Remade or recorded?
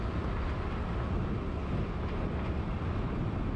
recorded